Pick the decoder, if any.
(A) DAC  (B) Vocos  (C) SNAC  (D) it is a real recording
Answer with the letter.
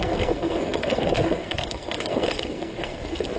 C